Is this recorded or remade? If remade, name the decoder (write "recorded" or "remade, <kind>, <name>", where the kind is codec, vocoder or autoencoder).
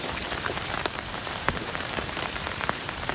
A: remade, vocoder, BigVGAN v2